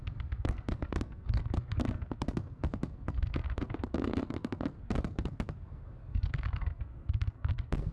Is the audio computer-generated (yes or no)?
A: yes